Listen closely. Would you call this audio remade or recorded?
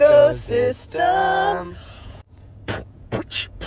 remade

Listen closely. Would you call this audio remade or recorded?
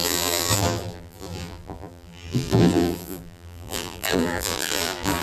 remade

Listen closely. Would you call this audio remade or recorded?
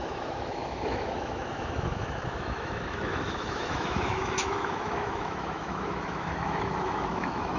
remade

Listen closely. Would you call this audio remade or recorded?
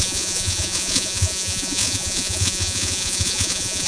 remade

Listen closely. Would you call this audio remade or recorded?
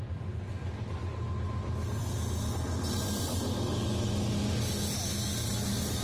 recorded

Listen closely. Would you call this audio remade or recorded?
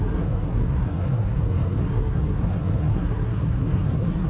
remade